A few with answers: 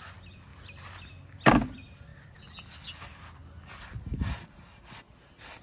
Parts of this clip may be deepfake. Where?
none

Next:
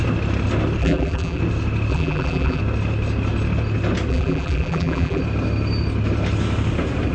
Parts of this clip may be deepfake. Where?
0.8-1.4 (vocoder, BigVGAN v2); 1.9-2.6; 4.1-5.2

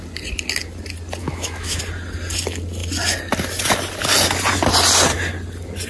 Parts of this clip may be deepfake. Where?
1.2-1.8 (autoencoder, DAC-VAE)

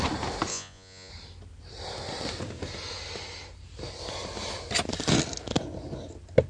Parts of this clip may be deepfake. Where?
0.5-1.1 (vocoder, Vocos)

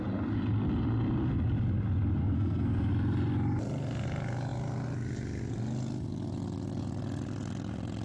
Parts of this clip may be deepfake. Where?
2.2-2.9 (codec, SNAC)

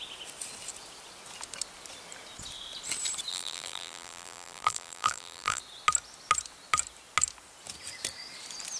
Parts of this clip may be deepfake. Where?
3.3-5.6 (vocoder, BigVGAN v2)

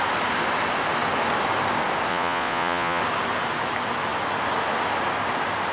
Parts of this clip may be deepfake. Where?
2.1-3.0 (vocoder, Vocos)

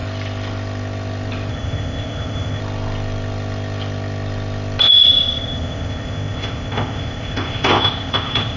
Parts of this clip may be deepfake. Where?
1.5-2.6 (codec, ZipCodec); 4.8-8.6